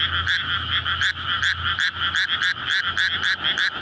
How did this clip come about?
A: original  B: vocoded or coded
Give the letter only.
A